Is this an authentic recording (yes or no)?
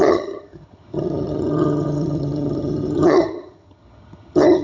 no